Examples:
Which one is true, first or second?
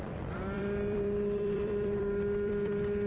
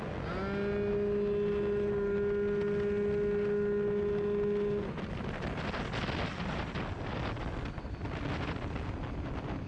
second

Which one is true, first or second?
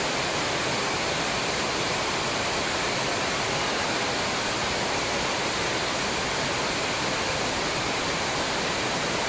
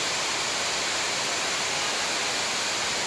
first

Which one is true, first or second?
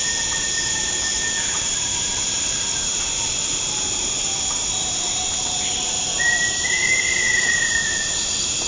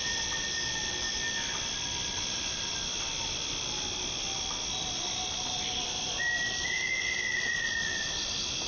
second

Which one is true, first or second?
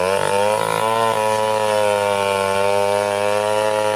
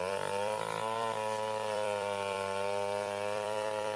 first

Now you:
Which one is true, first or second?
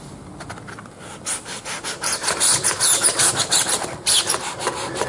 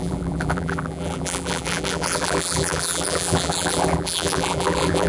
first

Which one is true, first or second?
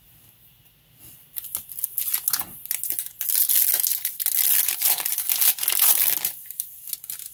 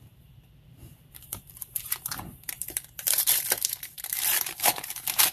first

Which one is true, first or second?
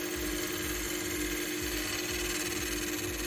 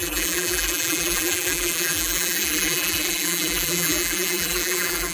first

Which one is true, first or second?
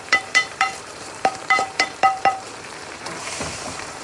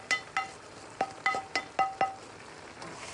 second